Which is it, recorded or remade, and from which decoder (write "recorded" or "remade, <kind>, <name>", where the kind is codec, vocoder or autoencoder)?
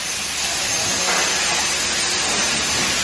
recorded